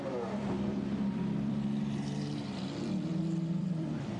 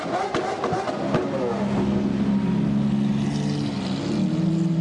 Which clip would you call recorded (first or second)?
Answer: second